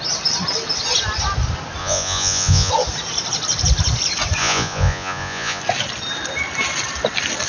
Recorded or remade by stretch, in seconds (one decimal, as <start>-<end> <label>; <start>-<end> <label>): 0.0-1.8 recorded; 1.8-2.7 remade; 2.7-4.4 recorded; 4.4-5.6 remade; 5.6-7.5 recorded